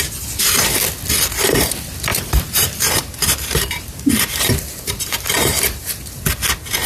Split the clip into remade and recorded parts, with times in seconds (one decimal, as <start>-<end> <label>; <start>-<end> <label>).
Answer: 0.0-2.1 recorded; 2.1-6.2 remade; 6.2-6.9 recorded